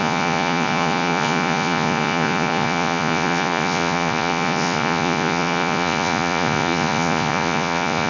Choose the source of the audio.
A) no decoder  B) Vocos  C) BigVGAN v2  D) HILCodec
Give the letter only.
B